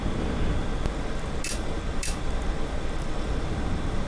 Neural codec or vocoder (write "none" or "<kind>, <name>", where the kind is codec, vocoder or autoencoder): none